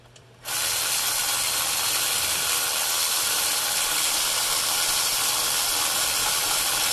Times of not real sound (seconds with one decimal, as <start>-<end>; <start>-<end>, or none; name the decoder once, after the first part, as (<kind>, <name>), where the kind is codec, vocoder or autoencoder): 0.0-6.9 (vocoder, BigVGAN v2)